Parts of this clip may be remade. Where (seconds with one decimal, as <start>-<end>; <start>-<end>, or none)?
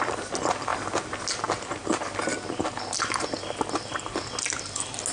none